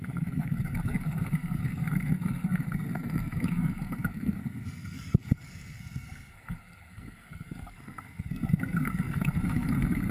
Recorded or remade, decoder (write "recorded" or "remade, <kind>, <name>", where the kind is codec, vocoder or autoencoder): remade, codec, SNAC